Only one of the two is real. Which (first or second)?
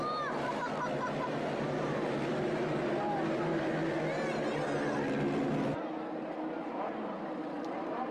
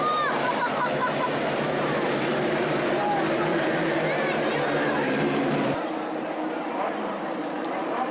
first